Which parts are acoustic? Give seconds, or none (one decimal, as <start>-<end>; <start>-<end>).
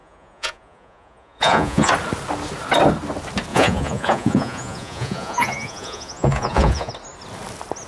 1.9-3.5; 6.9-7.9